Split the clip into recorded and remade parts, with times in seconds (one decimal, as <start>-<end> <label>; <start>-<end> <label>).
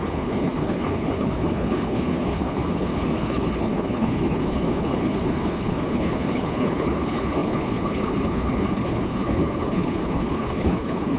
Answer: 0.0-11.2 remade